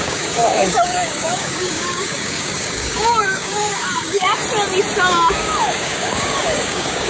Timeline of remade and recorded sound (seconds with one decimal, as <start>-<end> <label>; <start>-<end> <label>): 0.0-4.4 remade; 4.4-5.0 recorded; 5.0-7.1 remade